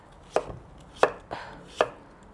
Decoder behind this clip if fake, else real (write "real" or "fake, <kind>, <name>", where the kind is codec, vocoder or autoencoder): real